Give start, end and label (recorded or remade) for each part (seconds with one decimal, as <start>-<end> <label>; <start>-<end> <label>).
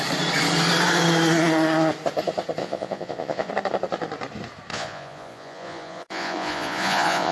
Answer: 0.0-2.6 recorded; 2.6-3.5 remade; 3.5-4.7 recorded; 4.7-7.3 remade